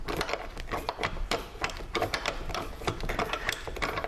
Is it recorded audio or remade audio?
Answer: recorded